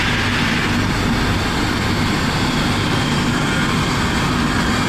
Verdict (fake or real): real